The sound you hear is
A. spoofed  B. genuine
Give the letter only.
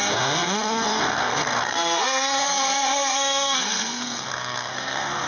A